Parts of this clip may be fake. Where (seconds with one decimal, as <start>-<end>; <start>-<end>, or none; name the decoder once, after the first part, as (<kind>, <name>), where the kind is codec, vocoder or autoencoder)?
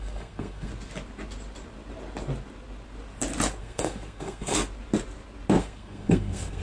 0.0-0.7 (codec, SNAC); 3.6-4.6; 5.6-6.6